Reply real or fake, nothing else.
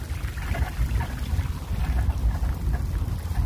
real